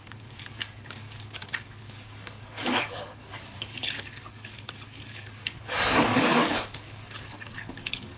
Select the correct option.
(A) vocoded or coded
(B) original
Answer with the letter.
A